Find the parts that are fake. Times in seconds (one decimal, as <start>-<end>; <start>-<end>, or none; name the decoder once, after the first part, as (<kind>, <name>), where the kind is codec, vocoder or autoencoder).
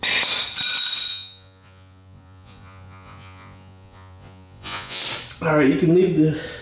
1.1-5.0 (vocoder, Vocos)